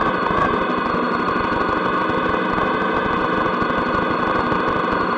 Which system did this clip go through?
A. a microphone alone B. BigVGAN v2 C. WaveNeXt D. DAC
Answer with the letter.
A